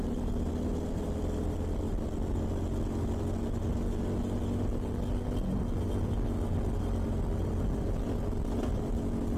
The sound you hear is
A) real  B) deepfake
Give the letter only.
A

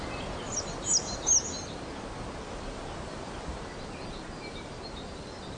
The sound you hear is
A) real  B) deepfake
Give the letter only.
A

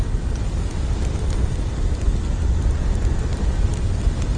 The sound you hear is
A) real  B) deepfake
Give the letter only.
A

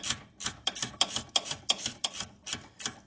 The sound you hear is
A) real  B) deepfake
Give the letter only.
B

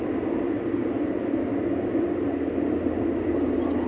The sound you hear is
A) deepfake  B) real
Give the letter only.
B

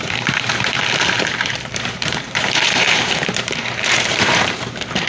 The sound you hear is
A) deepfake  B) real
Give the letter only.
A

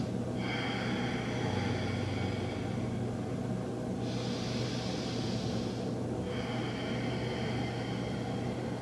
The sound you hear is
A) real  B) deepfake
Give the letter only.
A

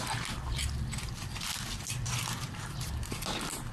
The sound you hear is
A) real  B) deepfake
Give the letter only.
B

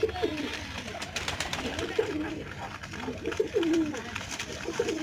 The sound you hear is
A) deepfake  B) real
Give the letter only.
A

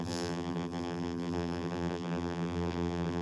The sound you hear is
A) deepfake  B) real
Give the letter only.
A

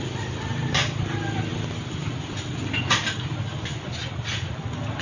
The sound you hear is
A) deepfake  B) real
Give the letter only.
B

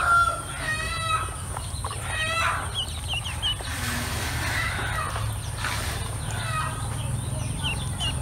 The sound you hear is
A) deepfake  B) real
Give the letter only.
B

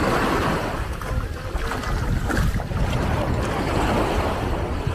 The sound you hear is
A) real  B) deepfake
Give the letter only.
A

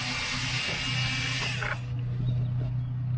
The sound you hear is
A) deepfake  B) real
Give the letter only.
B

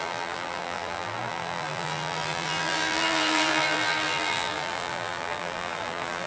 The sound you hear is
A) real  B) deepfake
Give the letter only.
B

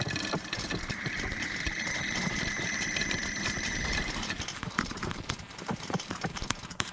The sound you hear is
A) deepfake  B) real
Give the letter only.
A